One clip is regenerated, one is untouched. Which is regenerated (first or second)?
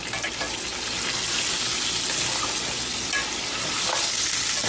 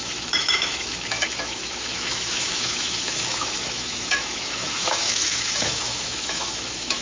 second